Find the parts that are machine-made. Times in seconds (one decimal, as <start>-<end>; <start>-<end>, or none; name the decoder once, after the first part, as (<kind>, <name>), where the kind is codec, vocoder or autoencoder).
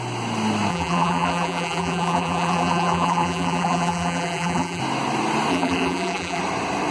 0.7-4.8 (vocoder, BigVGAN v2); 5.5-6.4